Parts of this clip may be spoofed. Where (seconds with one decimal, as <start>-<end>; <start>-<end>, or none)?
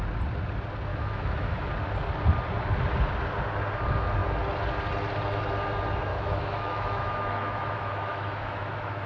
0.9-1.7; 6.1-9.1